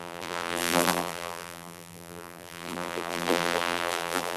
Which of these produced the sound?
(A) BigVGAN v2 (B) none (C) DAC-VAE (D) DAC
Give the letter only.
A